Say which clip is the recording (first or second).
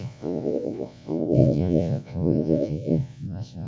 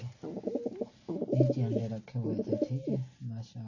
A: second